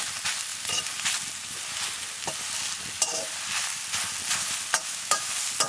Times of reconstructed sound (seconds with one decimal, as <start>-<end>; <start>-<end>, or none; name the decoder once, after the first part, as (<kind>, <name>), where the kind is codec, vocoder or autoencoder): 4.8-5.3 (autoencoder, DAC-VAE)